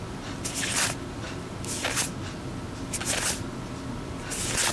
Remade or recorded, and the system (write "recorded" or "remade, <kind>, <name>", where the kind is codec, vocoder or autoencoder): recorded